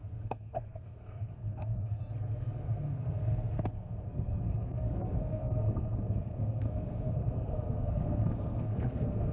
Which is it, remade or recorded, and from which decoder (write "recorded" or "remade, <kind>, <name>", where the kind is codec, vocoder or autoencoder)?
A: remade, codec, SNAC